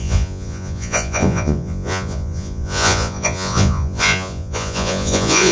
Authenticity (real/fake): fake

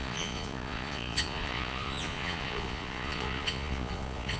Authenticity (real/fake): fake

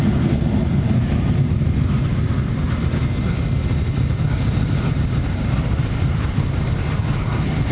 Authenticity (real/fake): real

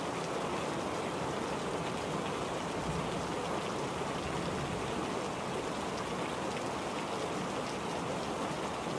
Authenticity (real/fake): real